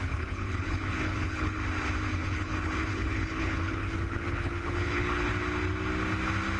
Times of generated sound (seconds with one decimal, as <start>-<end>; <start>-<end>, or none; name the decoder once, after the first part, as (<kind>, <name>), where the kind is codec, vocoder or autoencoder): 0.0-1.6 (codec, HILCodec); 2.1-5.3